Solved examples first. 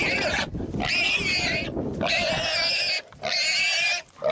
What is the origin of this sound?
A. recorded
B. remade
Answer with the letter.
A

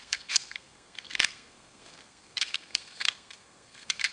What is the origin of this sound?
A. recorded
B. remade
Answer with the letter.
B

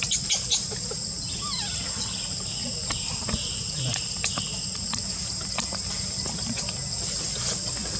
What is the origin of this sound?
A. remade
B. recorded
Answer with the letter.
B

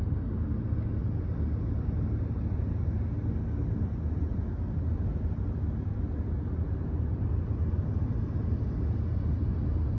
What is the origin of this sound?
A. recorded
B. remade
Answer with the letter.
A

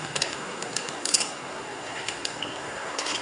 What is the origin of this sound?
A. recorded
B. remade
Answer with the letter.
B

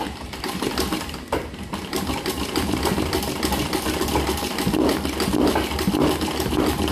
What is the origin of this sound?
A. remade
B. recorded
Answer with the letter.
B